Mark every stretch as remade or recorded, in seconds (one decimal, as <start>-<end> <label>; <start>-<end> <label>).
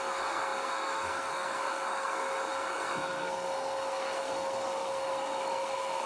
0.0-6.1 remade